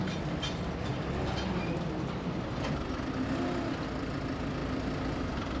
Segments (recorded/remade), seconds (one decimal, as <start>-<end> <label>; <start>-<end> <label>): 0.0-5.6 recorded